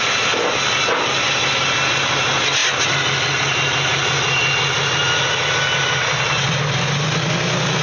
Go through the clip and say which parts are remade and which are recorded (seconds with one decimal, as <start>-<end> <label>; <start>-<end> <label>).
0.0-7.8 recorded